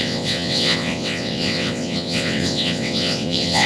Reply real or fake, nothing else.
fake